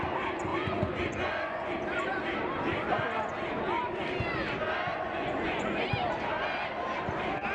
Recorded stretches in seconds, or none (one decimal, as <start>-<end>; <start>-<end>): 0.0-0.5; 1.7-4.9; 5.9-7.5